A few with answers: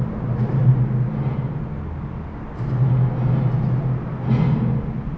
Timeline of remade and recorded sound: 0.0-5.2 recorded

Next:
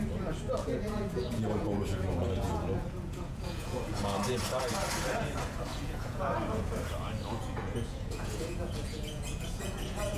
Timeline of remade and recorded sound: 0.0-0.6 recorded; 0.6-4.0 remade; 4.0-5.7 recorded; 5.7-6.7 remade; 6.7-7.4 recorded; 7.4-10.2 remade

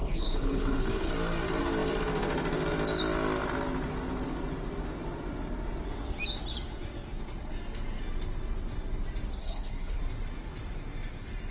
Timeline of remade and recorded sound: 0.0-1.1 remade; 1.1-9.4 recorded; 9.4-10.0 remade; 10.0-11.5 recorded

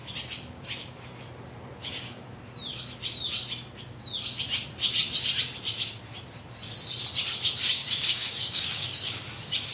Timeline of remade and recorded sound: 0.0-1.8 recorded; 1.8-2.4 remade; 2.4-7.8 recorded; 7.8-9.2 remade; 9.2-9.7 recorded

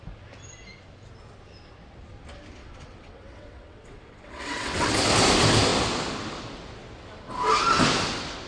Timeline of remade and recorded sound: 0.0-2.6 recorded; 2.6-4.9 remade; 4.9-8.5 recorded

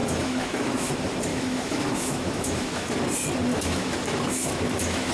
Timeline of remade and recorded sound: 0.0-0.9 remade; 0.9-1.3 recorded; 1.3-3.0 remade; 3.0-3.5 recorded; 3.5-5.1 remade